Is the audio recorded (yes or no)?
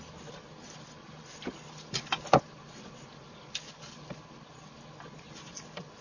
yes